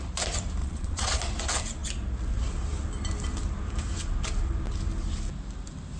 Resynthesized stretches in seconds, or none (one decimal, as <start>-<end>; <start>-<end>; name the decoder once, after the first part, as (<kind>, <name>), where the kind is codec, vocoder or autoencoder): 0.6-1.2 (vocoder, Vocos)